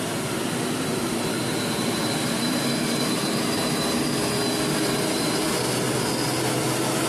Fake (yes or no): no